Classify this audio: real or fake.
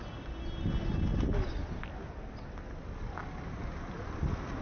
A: real